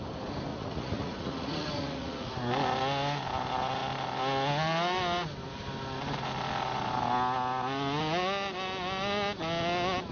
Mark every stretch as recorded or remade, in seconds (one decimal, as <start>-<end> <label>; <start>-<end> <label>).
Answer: 0.0-0.5 recorded; 0.5-2.3 remade; 2.3-10.1 recorded